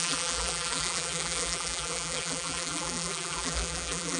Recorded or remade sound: remade